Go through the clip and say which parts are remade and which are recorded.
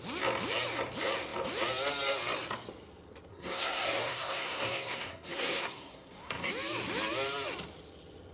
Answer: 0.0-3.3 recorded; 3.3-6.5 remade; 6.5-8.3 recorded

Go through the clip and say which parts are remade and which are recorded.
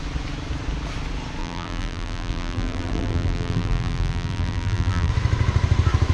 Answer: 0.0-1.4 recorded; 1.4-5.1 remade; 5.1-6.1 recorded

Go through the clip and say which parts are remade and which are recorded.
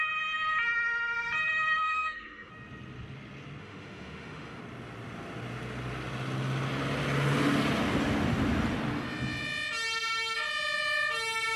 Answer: 0.0-1.8 recorded; 1.8-2.5 remade; 2.5-3.6 recorded; 3.6-4.6 remade; 4.6-11.6 recorded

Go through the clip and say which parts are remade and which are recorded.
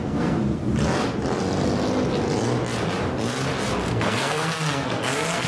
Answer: 0.0-0.6 remade; 0.6-3.9 recorded; 3.9-5.5 remade